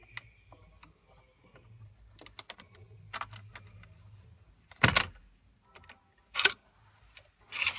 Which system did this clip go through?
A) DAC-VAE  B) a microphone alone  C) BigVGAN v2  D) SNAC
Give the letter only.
B